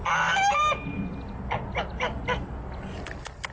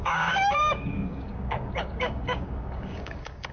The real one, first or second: first